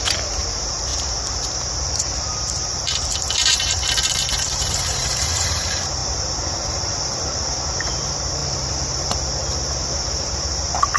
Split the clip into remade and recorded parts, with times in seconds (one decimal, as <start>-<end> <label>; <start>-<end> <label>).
0.0-11.0 remade